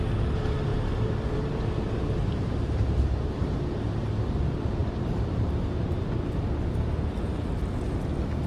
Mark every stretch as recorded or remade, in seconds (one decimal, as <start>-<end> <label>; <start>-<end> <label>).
0.0-0.7 recorded; 0.7-3.6 remade; 3.6-4.8 recorded; 4.8-6.1 remade; 6.1-8.5 recorded